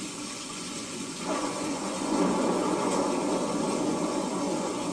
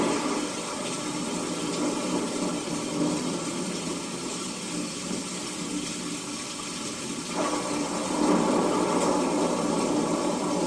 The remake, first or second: first